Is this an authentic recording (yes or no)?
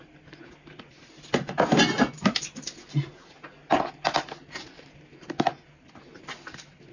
yes